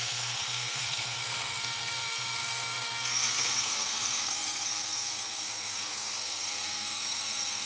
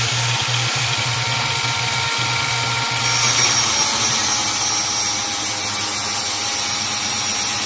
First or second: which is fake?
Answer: first